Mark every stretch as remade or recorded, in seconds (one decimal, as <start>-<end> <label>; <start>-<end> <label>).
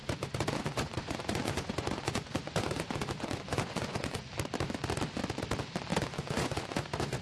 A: 0.0-4.3 remade; 4.3-5.9 recorded; 5.9-7.2 remade